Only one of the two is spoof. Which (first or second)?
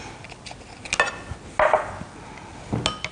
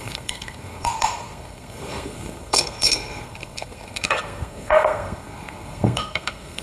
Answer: second